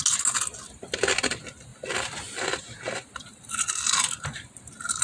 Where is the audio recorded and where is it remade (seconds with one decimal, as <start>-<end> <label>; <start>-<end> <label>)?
0.0-5.0 recorded